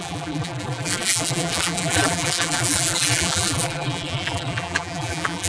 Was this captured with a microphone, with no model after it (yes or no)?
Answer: no